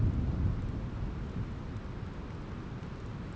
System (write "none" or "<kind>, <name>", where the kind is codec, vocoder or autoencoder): none